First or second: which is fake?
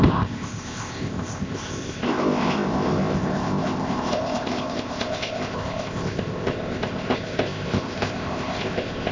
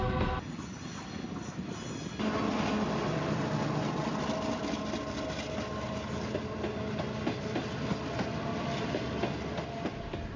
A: first